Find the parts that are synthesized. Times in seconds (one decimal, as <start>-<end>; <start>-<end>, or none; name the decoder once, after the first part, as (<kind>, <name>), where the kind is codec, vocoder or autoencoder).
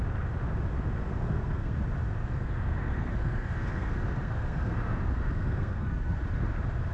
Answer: 1.1-1.8 (codec, SNAC); 2.2-6.2